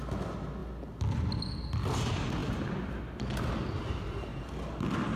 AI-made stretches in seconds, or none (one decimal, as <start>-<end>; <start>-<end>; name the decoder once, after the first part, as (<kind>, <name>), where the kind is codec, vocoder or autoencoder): 2.4-3.0 (vocoder, BigVGAN v2)